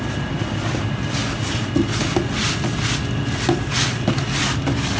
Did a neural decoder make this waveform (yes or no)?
no